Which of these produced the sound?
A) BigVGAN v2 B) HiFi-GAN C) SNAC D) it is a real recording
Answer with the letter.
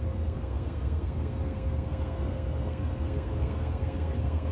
C